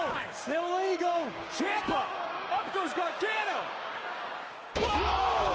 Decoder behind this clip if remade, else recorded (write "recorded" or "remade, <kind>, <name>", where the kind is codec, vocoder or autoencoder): remade, codec, DAC